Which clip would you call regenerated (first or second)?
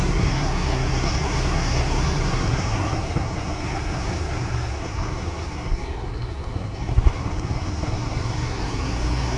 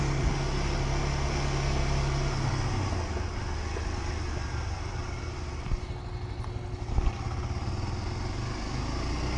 first